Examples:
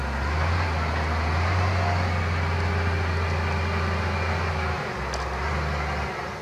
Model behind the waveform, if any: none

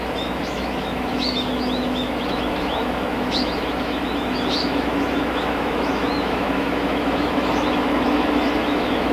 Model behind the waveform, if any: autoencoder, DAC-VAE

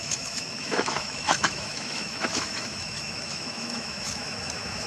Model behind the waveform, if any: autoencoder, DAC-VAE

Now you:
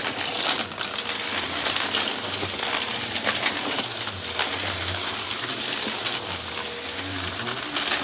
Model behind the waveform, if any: none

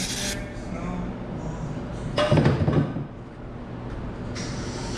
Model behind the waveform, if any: none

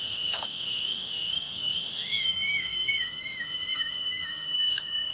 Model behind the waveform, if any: autoencoder, DAC-VAE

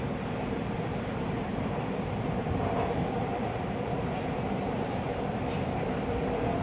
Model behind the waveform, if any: vocoder, BigVGAN v2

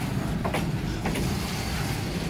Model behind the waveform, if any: none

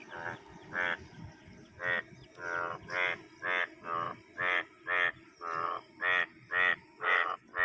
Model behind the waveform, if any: none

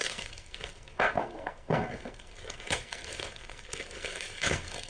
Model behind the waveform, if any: codec, SNAC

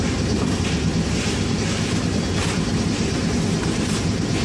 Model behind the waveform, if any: none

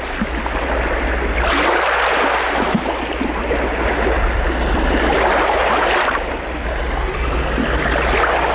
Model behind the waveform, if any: none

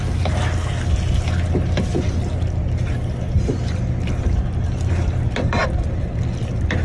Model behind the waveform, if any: none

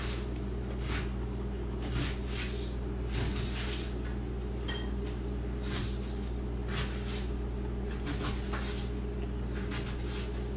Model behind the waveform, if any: none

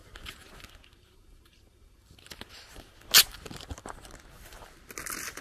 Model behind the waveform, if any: none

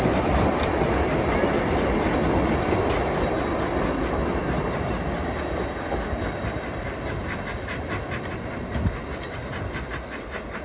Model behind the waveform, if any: none